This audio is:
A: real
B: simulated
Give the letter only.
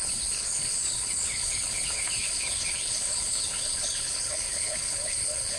B